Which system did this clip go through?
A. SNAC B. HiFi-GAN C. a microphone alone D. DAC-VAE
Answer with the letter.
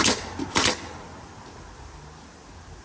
C